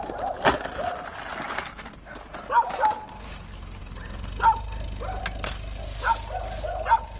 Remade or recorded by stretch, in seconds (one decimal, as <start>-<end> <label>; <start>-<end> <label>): 0.0-7.2 recorded